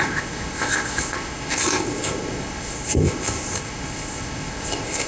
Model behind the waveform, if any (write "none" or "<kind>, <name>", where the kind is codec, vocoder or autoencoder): codec, ZipCodec